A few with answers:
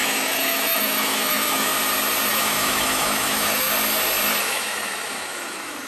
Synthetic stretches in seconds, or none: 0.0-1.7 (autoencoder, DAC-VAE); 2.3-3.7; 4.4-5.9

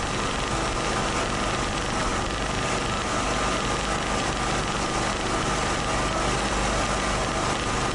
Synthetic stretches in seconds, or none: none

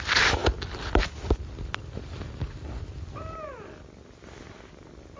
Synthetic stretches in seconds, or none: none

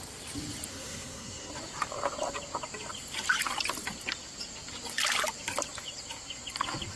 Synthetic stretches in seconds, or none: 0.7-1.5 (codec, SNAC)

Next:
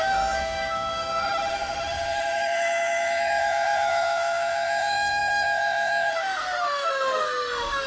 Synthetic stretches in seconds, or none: 0.0-7.9 (autoencoder, DAC-VAE)

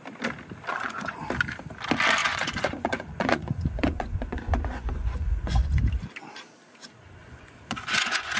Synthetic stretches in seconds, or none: 0.7-1.2 (vocoder, Vocos); 2.2-5.8; 7.2-8.4

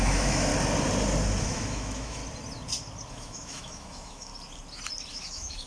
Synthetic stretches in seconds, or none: 0.0-0.5 (autoencoder, DAC-VAE); 1.4-2.2; 3.1-4.3; 5.1-5.7

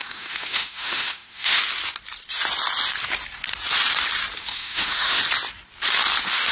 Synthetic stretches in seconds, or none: 0.0-1.6 (autoencoder, DAC-VAE); 4.4-5.2